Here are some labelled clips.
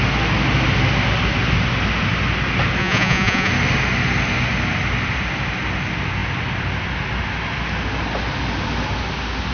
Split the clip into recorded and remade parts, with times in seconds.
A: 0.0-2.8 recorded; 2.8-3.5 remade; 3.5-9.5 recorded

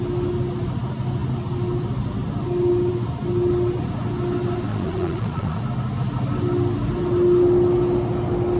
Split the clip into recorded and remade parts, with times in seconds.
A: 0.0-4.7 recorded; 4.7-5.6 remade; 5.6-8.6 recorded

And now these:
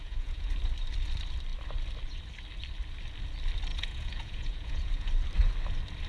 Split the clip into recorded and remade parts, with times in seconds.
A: 0.0-0.5 remade; 0.5-3.7 recorded; 3.7-5.1 remade; 5.1-6.1 recorded

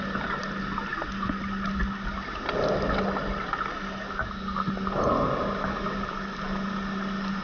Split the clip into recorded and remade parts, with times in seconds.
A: 0.0-7.4 recorded

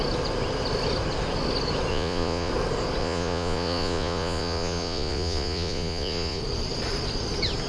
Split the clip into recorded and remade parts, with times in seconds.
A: 0.0-1.9 recorded; 1.9-2.5 remade; 2.5-3.0 recorded; 3.0-6.4 remade; 6.4-7.7 recorded